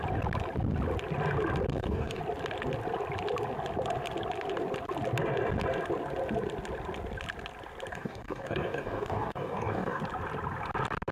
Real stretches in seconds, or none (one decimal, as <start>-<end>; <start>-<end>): 0.0-1.7; 2.2-7.9; 10.0-11.1